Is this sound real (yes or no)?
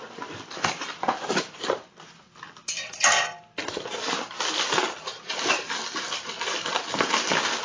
yes